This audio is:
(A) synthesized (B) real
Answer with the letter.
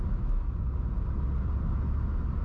B